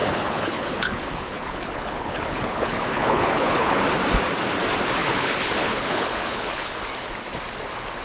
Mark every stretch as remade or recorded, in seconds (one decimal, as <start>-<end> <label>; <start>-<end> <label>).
0.0-3.8 remade; 3.8-5.0 recorded; 5.0-6.7 remade; 6.7-8.0 recorded